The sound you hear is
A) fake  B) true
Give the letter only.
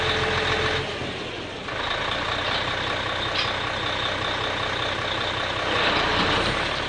B